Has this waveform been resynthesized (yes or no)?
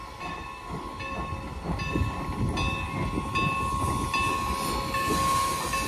no